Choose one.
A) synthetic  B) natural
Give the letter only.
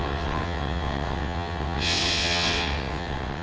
A